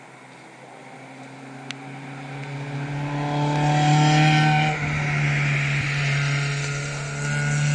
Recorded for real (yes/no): yes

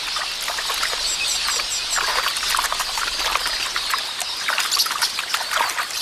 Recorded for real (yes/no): yes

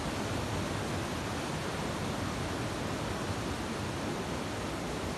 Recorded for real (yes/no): yes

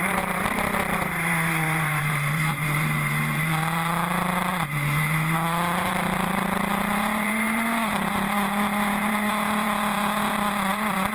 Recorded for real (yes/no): no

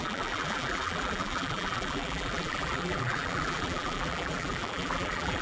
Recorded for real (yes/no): no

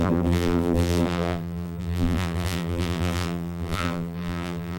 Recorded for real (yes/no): no